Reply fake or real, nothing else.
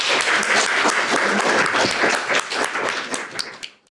real